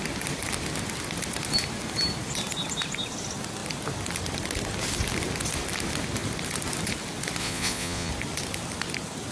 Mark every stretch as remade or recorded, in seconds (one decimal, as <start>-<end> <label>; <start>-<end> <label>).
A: 0.0-7.4 recorded; 7.4-8.1 remade; 8.1-9.3 recorded